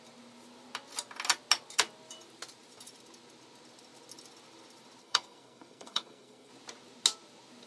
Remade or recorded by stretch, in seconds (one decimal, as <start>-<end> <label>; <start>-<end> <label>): 0.0-5.0 recorded; 5.0-6.5 remade; 6.5-7.7 recorded